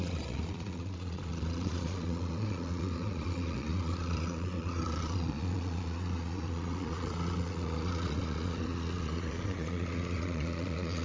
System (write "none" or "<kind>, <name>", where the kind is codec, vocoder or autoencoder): vocoder, Vocos